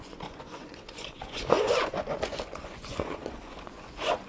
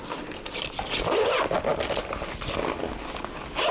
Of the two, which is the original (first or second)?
second